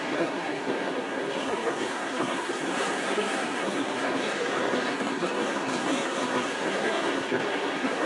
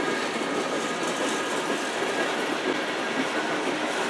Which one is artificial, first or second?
first